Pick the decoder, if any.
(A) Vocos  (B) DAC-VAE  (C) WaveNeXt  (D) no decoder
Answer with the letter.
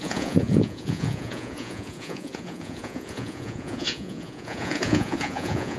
A